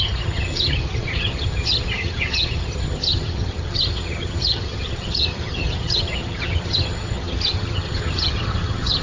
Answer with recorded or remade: remade